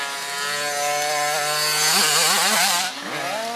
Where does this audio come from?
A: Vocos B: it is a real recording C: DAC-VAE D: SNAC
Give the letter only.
B